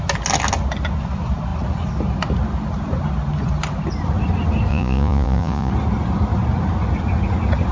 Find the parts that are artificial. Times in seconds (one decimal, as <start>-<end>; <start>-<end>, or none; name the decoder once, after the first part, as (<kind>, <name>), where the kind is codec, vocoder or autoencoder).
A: 4.7-5.7 (vocoder, Vocos)